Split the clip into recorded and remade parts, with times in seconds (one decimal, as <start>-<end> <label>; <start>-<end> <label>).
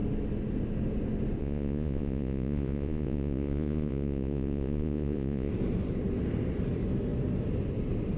0.0-1.4 recorded; 1.4-5.5 remade; 5.5-8.2 recorded